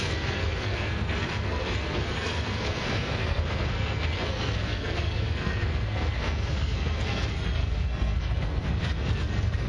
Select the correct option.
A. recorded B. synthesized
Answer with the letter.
B